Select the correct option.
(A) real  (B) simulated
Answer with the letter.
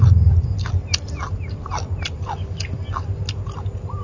A